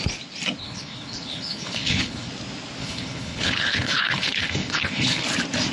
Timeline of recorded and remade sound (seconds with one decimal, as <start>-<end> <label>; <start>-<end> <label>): 0.0-0.6 recorded; 0.6-2.3 remade; 2.3-2.8 recorded; 2.8-5.2 remade; 5.2-5.7 recorded